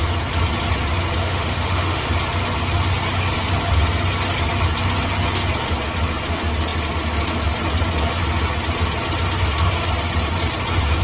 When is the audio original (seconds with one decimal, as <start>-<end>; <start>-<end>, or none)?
0.0-1.2; 2.1-11.0